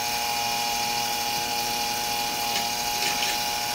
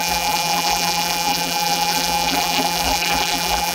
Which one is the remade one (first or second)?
second